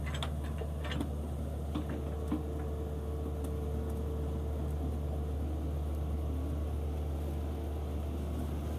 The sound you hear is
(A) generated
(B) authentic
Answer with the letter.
B